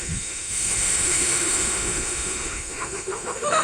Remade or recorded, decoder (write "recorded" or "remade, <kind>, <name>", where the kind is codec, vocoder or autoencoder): remade, autoencoder, DAC-VAE